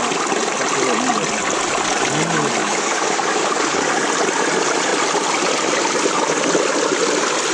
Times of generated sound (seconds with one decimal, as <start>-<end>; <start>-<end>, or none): 2.6-3.9

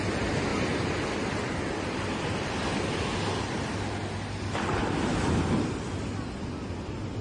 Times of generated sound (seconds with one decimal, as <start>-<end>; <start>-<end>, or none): none

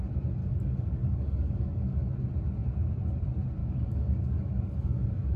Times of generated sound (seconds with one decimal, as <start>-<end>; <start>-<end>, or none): 0.4-2.1; 3.6-5.4

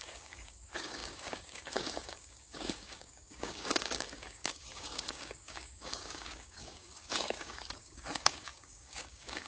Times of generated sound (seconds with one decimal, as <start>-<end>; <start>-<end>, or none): 0.0-9.5

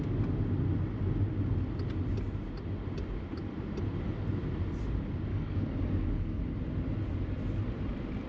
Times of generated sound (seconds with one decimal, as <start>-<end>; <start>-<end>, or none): 5.3-6.4